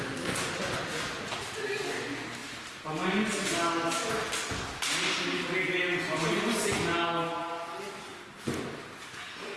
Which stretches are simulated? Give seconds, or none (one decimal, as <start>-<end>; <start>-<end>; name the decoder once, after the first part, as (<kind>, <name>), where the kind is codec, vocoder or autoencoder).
none